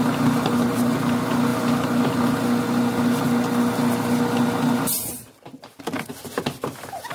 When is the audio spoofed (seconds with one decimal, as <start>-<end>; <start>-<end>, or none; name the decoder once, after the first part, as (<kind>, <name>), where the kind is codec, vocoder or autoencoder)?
none